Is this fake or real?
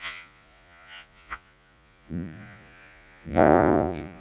fake